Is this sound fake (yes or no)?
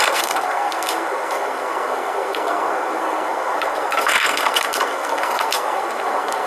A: yes